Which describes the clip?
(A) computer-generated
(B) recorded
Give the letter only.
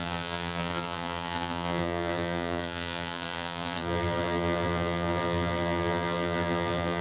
A